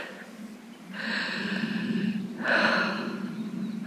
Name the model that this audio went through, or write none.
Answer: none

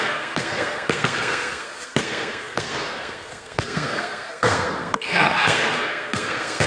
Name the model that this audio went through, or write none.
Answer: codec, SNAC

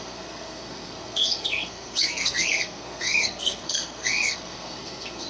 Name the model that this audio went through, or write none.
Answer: codec, SNAC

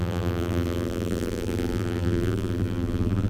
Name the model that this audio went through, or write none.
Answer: vocoder, BigVGAN v2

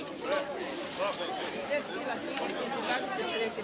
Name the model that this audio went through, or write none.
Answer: none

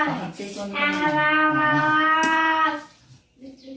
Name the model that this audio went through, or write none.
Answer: none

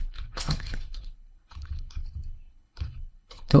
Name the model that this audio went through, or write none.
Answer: codec, HILCodec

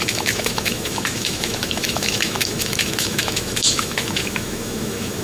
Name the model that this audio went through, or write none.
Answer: autoencoder, DAC-VAE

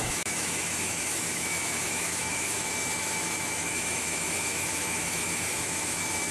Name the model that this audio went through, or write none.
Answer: autoencoder, DAC-VAE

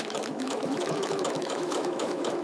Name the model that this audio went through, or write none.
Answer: autoencoder, DAC-VAE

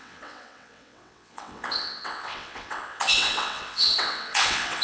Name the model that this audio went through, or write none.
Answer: vocoder, WaveNeXt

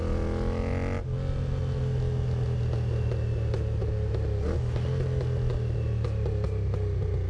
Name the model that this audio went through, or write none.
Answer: none